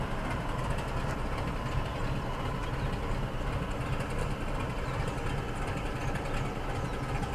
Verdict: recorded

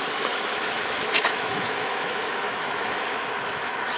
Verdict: remade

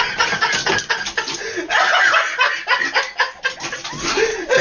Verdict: recorded